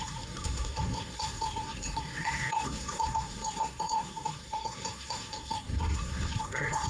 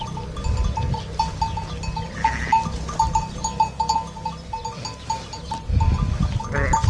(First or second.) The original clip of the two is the second